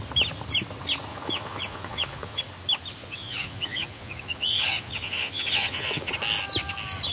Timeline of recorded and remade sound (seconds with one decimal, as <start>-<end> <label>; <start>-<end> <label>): 0.0-1.1 recorded; 1.1-2.4 remade; 2.4-3.0 recorded; 3.0-6.1 remade; 6.1-7.1 recorded